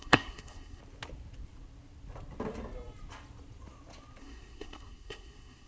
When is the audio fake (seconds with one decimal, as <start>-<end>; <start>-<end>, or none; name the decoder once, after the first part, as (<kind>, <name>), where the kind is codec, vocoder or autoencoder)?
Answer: 0.0-0.8 (codec, SNAC); 4.2-5.7